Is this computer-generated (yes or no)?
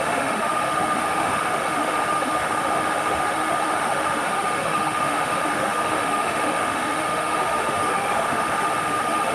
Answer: yes